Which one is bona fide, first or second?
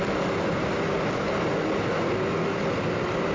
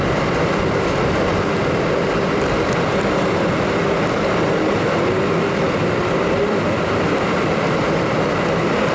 first